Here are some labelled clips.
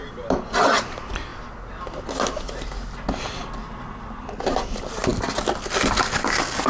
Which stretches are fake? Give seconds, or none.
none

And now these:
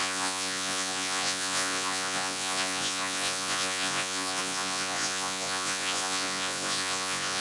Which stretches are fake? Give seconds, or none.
0.0-7.4 (vocoder, Vocos)

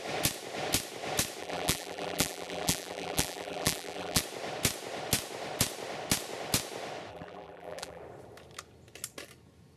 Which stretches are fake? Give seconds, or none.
1.4-4.2 (vocoder, BigVGAN v2); 7.1-8.0

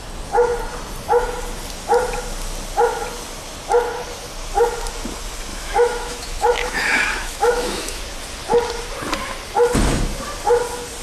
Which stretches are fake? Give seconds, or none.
5.5-8.0 (autoencoder, DAC-VAE)

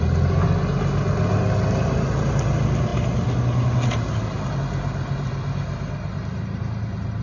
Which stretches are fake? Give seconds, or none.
none

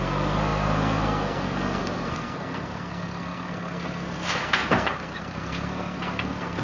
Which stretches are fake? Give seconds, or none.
0.0-6.6 (codec, SNAC)